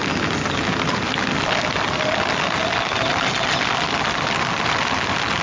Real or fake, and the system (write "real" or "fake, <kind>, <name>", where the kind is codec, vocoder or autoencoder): real